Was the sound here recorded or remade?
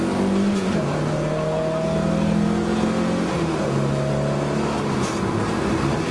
recorded